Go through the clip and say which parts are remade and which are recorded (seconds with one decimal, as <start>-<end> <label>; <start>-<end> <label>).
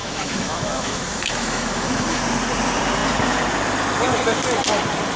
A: 0.0-2.2 remade; 2.2-5.2 recorded